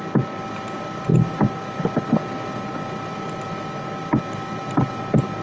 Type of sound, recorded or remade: recorded